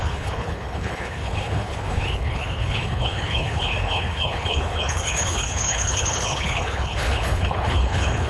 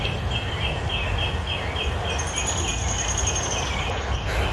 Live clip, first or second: second